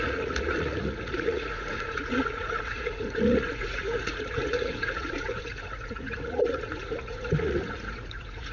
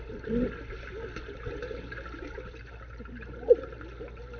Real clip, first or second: second